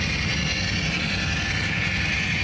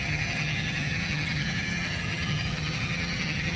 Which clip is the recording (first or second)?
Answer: first